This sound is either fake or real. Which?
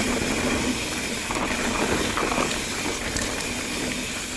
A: real